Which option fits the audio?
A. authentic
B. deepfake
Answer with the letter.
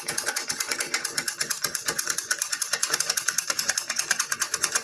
B